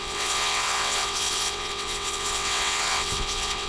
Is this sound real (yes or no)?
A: no